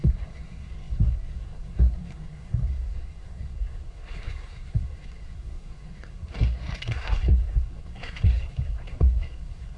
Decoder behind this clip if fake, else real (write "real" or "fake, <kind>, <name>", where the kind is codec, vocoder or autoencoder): fake, codec, SNAC